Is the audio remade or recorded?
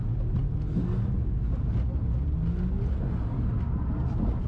recorded